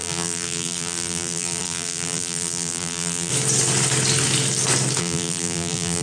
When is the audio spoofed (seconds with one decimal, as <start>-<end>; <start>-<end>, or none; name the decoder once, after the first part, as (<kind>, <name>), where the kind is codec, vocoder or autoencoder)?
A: 0.0-3.3 (vocoder, BigVGAN v2); 5.0-6.0